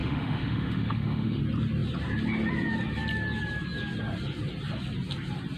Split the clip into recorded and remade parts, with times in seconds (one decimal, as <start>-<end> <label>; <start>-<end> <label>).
0.0-1.4 remade; 1.4-5.6 recorded